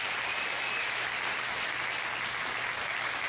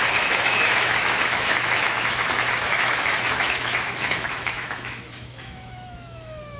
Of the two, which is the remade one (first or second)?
second